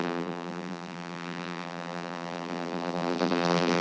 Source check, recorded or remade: remade